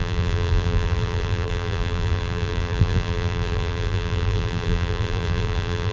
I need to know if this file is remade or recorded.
remade